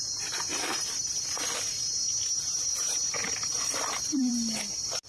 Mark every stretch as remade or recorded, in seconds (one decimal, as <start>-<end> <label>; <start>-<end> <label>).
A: 0.0-0.5 recorded; 0.5-1.5 remade; 1.5-3.2 recorded; 3.2-4.3 remade; 4.3-5.1 recorded